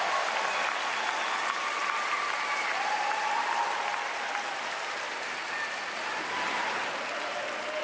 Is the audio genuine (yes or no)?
yes